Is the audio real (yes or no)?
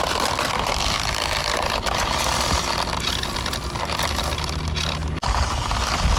yes